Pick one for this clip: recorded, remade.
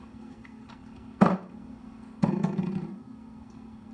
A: remade